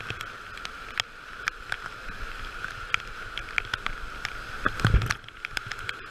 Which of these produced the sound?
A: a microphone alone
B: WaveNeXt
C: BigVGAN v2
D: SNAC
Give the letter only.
A